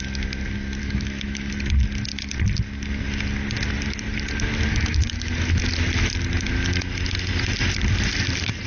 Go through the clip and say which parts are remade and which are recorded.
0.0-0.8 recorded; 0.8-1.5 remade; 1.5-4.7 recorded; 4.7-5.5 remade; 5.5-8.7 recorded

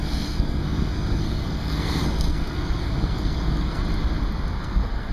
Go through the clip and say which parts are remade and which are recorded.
0.0-3.8 remade; 3.8-4.6 recorded; 4.6-5.1 remade

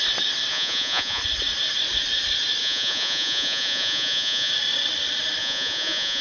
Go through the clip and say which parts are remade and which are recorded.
0.0-0.5 recorded; 0.5-1.2 remade; 1.2-2.6 recorded; 2.6-4.5 remade; 4.5-5.4 recorded; 5.4-6.2 remade